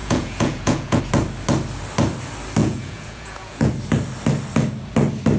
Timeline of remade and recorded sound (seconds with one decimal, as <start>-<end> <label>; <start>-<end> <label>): 0.0-1.0 remade; 1.0-2.6 recorded; 2.6-3.7 remade; 3.7-5.4 recorded